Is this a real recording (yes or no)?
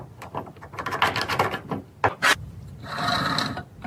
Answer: yes